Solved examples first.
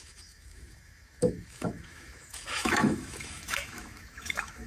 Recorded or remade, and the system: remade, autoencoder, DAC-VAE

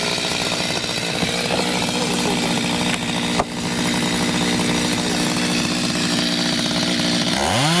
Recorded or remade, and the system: recorded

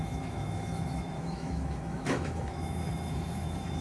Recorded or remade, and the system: remade, autoencoder, DAC-VAE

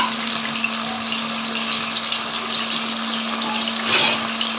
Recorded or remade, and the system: recorded